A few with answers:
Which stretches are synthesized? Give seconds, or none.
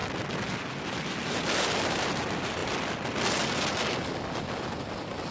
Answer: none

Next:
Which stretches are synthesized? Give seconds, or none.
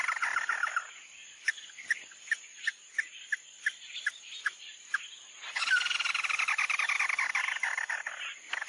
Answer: none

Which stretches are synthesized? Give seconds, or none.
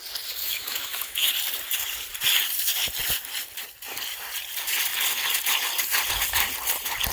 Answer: 0.4-1.3 (autoencoder, DAC-VAE)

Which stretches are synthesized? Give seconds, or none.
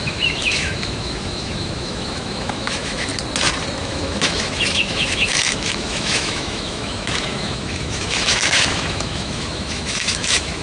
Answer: 0.0-3.1 (autoencoder, DAC-VAE); 3.8-10.6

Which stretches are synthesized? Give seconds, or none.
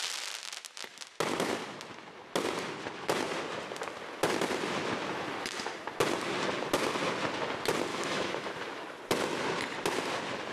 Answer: 7.9-8.5 (autoencoder, DAC-VAE)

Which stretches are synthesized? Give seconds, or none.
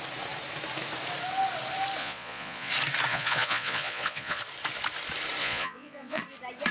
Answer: 2.0-2.7 (vocoder, Vocos); 3.1-4.4; 5.4-6.2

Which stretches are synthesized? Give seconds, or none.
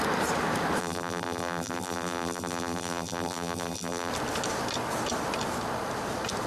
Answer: 0.8-4.1 (vocoder, BigVGAN v2)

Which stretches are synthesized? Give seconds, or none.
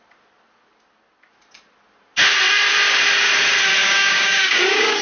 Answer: 3.8-5.0 (codec, DAC)